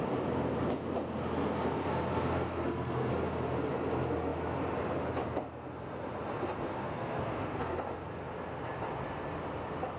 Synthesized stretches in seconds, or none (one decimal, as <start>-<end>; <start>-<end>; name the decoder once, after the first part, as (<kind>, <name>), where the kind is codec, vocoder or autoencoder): 1.8-3.1 (codec, SNAC); 6.7-7.8